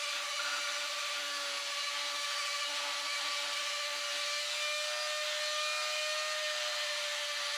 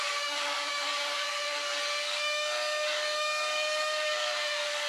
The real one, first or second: first